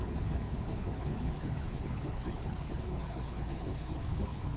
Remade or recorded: remade